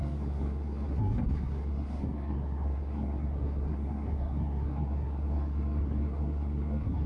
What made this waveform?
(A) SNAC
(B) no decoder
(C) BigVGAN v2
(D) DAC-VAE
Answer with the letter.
A